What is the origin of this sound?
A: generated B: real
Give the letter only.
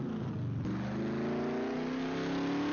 B